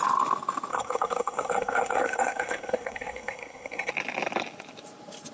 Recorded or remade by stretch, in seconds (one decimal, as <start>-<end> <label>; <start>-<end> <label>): 0.0-0.7 recorded; 0.7-3.9 remade; 3.9-5.3 recorded